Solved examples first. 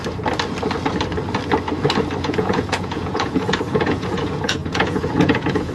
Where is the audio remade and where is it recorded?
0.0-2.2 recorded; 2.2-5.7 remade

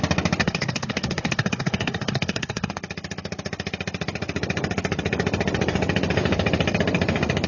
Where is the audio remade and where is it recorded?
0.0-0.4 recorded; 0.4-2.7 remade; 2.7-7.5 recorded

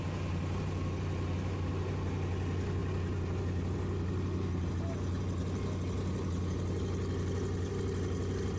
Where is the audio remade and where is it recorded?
0.0-8.6 recorded